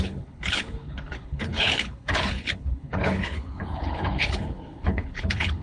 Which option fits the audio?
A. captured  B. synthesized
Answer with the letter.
B